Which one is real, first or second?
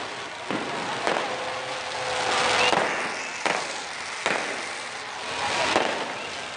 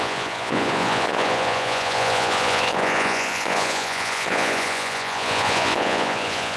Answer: first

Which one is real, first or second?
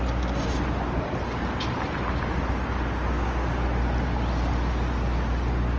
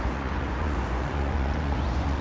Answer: first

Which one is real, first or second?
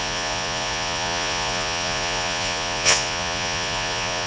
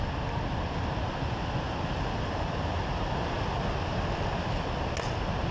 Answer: second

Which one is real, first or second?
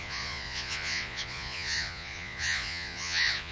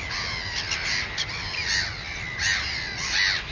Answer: second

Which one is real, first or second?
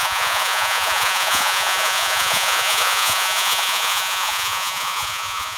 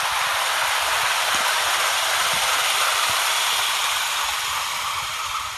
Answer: second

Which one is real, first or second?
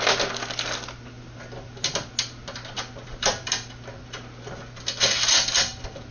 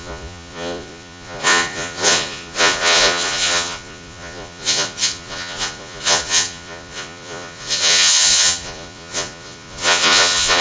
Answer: first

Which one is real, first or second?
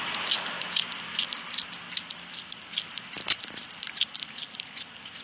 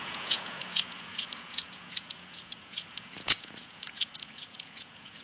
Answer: first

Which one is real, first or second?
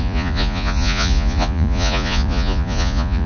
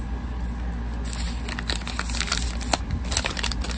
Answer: second